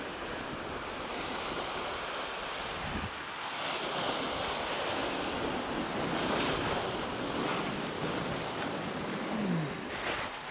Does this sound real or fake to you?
real